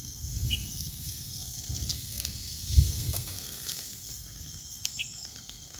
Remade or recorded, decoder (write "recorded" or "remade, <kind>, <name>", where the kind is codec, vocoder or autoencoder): remade, codec, SNAC